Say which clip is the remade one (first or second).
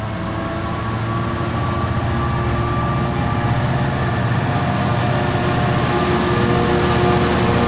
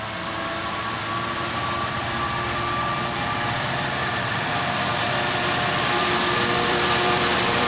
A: second